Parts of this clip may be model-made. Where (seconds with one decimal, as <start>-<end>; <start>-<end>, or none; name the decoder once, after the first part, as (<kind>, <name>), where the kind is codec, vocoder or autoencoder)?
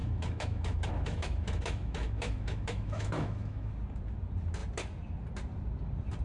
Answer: 0.0-3.7 (autoencoder, DAC-VAE)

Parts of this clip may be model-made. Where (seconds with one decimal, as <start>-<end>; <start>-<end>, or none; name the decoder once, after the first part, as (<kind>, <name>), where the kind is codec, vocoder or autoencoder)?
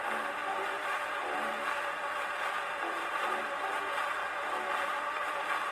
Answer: none